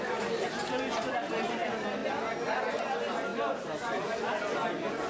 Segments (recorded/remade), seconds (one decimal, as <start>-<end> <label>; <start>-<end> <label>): 0.0-5.1 recorded